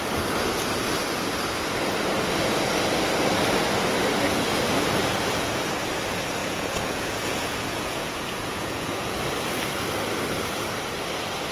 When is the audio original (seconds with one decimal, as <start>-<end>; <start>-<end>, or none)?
0.0-6.4; 9.2-11.5